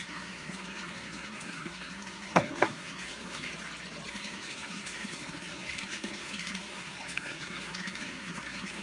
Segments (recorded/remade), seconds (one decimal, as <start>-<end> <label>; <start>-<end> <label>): 0.0-3.5 remade; 3.5-4.1 recorded; 4.1-8.8 remade